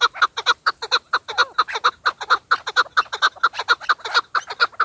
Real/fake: real